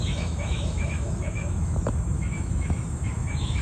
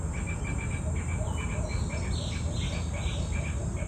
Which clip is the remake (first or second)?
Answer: first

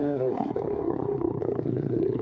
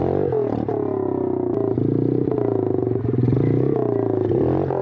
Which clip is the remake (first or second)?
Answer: first